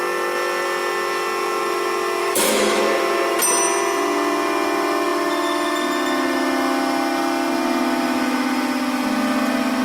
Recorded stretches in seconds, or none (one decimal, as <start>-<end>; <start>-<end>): 0.0-2.2; 2.8-9.8